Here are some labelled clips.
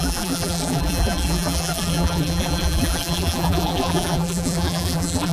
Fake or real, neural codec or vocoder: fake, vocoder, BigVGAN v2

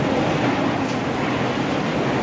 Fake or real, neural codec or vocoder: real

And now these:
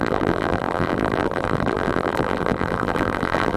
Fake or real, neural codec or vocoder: fake, vocoder, BigVGAN v2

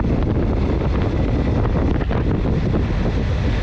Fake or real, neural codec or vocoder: real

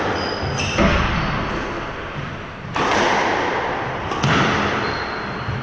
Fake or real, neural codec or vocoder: real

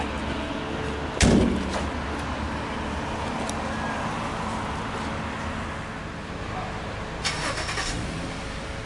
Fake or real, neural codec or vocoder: real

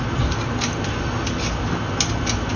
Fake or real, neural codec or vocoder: real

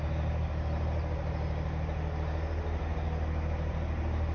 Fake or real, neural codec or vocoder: real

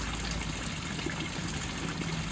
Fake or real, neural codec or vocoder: real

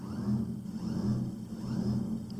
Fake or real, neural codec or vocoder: real